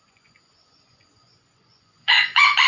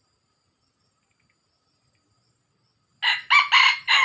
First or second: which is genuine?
second